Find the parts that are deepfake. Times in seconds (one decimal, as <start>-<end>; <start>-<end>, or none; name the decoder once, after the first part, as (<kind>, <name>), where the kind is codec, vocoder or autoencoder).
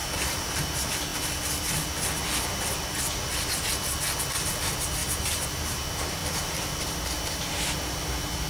0.0-0.6 (vocoder, BigVGAN v2); 5.0-5.8